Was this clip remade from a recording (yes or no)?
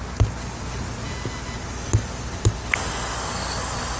no